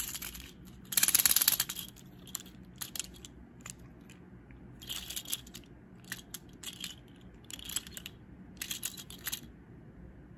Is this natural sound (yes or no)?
yes